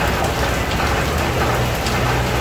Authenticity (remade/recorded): recorded